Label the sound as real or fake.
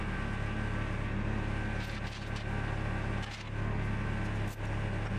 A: real